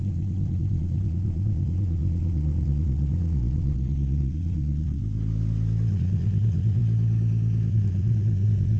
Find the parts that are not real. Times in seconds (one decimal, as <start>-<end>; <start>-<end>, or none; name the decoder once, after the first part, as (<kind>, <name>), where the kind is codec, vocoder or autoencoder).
0.0-5.0 (vocoder, Vocos); 5.9-6.8; 7.7-8.8